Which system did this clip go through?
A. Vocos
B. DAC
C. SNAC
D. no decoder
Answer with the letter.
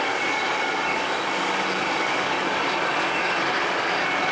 B